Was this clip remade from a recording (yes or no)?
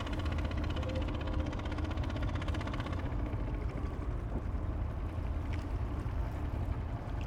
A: yes